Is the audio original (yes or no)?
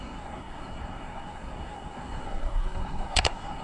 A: no